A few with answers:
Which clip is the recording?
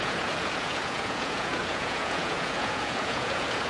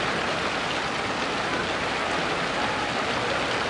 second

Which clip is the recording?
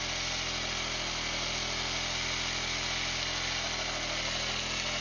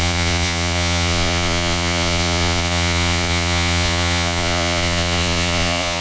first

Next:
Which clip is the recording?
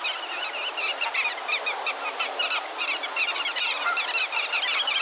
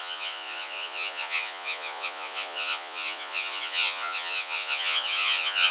first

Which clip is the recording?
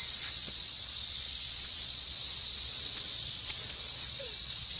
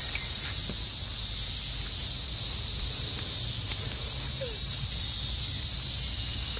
second